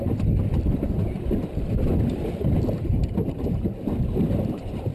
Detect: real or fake real